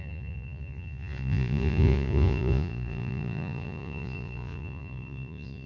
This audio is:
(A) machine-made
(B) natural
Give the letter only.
A